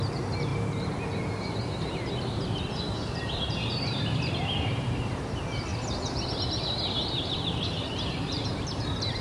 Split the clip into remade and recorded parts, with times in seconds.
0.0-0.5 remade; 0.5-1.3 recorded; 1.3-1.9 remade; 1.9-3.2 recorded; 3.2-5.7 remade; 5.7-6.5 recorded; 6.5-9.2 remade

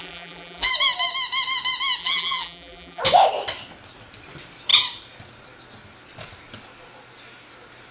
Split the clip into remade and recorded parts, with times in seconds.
0.0-0.7 remade; 0.7-2.0 recorded; 2.0-3.0 remade; 3.0-7.9 recorded

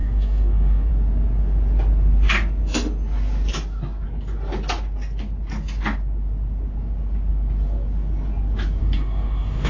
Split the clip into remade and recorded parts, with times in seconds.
0.0-0.9 remade; 0.9-8.8 recorded; 8.8-9.7 remade

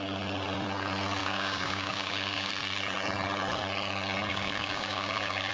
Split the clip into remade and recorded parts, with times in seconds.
0.0-1.2 recorded; 1.2-2.5 remade; 2.5-4.3 recorded; 4.3-5.5 remade

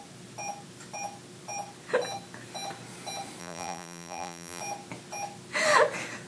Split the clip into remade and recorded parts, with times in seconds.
0.0-3.4 recorded; 3.4-4.6 remade; 4.6-6.3 recorded